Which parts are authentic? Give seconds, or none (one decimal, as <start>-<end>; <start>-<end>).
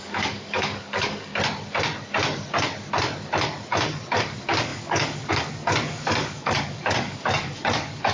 1.3-4.2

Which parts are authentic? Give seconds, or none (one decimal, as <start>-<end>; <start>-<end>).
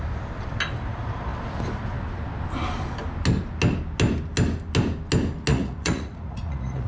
0.0-5.5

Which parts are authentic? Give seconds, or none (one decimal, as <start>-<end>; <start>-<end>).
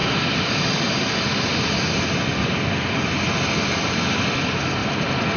0.0-5.4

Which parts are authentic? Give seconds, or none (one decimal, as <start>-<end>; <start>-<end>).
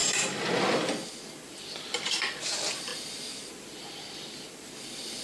2.9-3.5